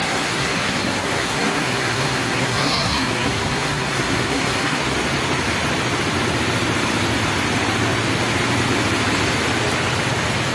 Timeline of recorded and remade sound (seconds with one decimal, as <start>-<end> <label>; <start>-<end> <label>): 0.0-4.8 remade; 4.8-10.5 recorded

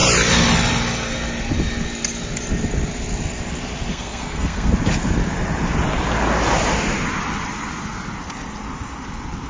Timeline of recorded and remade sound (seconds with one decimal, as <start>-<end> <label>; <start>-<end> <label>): 0.0-3.9 recorded; 3.9-4.7 remade; 4.7-9.5 recorded